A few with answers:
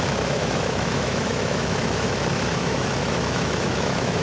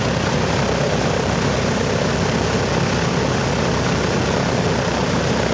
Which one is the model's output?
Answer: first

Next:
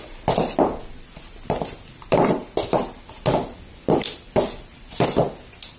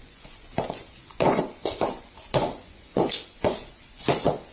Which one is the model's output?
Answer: second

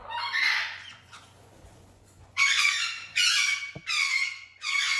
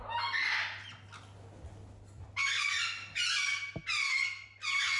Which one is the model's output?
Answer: first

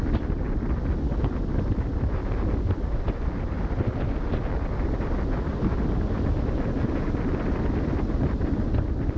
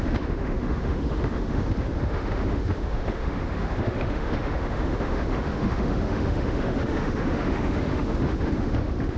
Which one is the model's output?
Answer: second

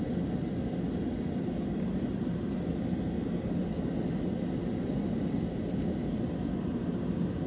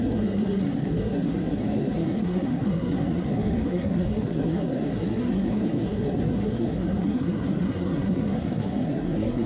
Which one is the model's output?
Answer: second